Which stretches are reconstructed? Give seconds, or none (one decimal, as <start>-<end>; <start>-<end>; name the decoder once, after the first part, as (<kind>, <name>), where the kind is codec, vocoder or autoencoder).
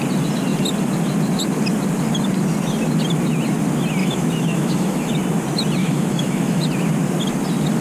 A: 4.0-5.1 (autoencoder, DAC-VAE); 5.8-6.6